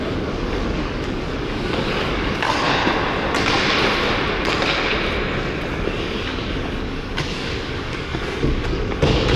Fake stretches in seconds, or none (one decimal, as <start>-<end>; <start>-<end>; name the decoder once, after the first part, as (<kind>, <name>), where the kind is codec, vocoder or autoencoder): 0.0-2.8 (codec, DAC); 5.7-9.4